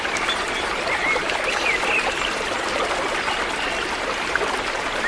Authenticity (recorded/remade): recorded